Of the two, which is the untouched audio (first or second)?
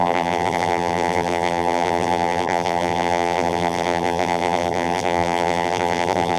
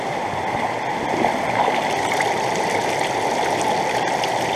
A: second